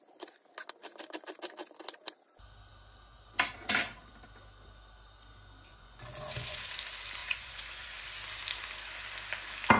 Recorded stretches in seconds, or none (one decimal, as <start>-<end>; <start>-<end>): 0.0-5.7; 6.7-7.2; 8.0-9.8

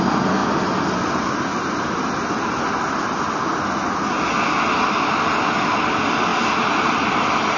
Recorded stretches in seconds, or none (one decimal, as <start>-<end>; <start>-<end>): 0.4-4.0

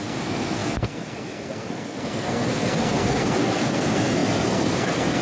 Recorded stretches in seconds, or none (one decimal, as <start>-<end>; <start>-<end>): none

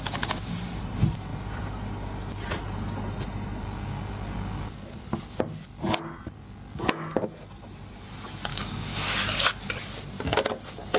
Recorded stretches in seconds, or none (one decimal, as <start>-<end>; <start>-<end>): 0.0-8.5; 9.5-11.0

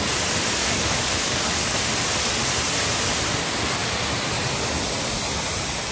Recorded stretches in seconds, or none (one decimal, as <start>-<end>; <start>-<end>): 0.0-0.6; 1.9-5.9

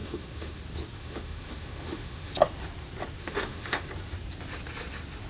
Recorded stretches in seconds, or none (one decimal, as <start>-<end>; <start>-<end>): 0.6-1.0; 2.3-3.2; 3.9-5.3